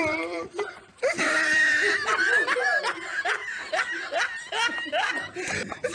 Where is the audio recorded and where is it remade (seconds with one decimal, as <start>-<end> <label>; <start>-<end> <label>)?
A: 0.0-3.1 remade; 3.1-5.3 recorded; 5.3-5.9 remade

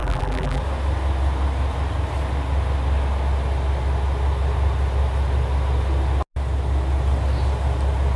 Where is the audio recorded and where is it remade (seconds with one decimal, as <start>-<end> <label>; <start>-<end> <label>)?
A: 0.0-0.6 remade; 0.6-8.2 recorded

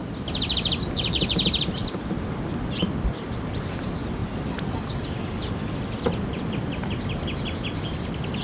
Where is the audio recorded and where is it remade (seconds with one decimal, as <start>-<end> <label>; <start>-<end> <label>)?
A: 0.0-1.3 recorded; 1.3-8.4 remade